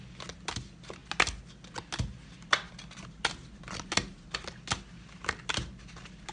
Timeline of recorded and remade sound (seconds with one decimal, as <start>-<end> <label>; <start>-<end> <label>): 0.0-6.3 recorded